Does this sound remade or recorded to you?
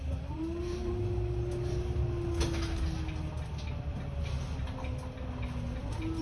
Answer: recorded